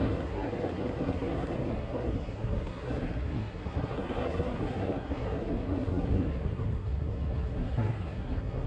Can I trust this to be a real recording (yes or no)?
no